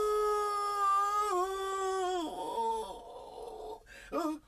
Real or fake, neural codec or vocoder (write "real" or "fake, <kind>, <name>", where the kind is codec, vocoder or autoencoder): real